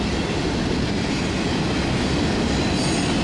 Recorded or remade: recorded